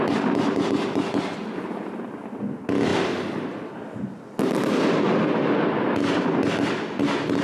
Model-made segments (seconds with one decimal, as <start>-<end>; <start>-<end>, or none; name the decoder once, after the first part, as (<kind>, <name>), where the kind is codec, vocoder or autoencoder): none